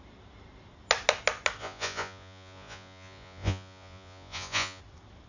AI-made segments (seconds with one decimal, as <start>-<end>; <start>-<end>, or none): 1.6-4.8

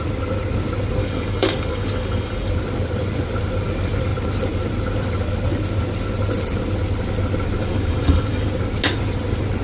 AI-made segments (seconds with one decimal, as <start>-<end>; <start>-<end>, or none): 1.0-2.5; 7.6-8.5

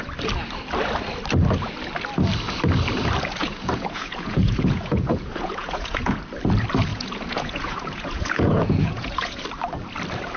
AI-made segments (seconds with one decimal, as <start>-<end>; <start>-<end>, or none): 3.4-6.2; 6.9-9.4

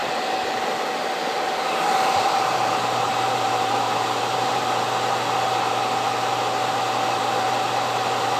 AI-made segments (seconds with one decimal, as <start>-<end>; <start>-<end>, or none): 0.0-4.5

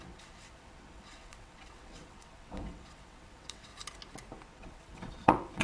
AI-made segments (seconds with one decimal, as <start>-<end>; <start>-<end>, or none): 0.0-3.7; 4.5-5.6

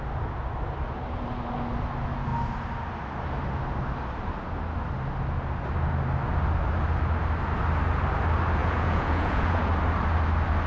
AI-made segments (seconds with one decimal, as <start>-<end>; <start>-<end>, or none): 8.6-9.7

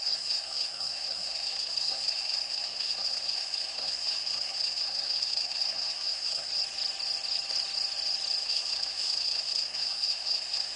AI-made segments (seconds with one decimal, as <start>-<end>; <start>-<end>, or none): 0.0-6.5; 8.4-10.8

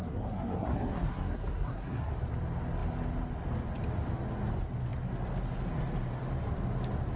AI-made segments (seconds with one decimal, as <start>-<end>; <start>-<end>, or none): 0.0-2.1